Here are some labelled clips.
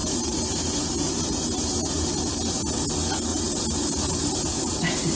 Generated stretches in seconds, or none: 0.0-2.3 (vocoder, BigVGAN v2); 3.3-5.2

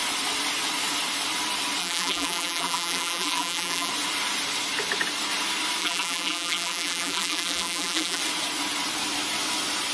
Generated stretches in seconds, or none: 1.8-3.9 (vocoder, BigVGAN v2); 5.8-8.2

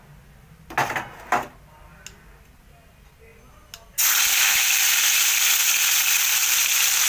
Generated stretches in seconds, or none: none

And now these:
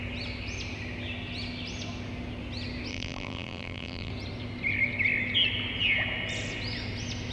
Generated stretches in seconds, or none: 2.9-4.1 (vocoder, BigVGAN v2)

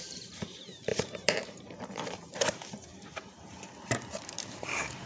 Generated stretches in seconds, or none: 0.0-5.1 (vocoder, BigVGAN v2)